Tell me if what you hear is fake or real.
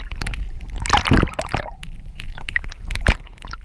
fake